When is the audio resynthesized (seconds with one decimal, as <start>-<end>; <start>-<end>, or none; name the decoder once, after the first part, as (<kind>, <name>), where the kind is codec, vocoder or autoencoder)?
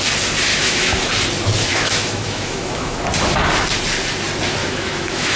0.5-1.0 (autoencoder, DAC-VAE); 1.7-3.0; 4.6-5.4